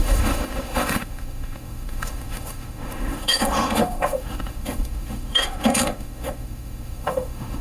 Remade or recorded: remade